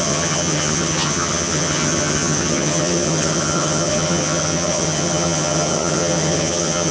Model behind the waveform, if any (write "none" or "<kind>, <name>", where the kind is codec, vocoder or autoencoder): vocoder, HiFi-GAN